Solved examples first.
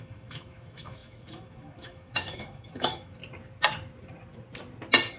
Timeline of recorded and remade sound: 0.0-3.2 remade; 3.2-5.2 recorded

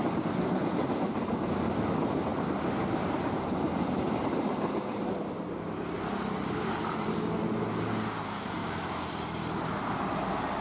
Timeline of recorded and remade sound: 0.0-8.6 recorded; 8.6-9.1 remade; 9.1-10.6 recorded

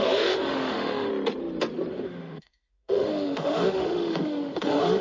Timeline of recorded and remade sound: 0.0-1.1 remade; 1.1-1.9 recorded; 1.9-5.0 remade